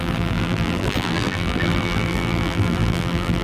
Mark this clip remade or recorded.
remade